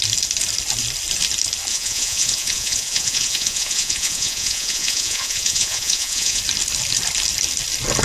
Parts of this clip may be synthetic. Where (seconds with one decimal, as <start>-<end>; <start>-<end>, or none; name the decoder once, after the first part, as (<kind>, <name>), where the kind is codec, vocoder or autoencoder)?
1.7-6.4 (vocoder, Vocos)